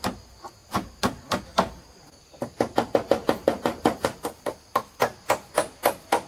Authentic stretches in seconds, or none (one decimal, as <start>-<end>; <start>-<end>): 0.0-3.4; 4.8-6.3